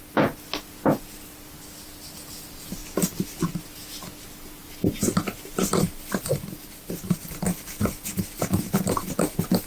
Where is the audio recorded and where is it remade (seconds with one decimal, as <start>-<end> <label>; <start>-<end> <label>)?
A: 0.0-9.7 recorded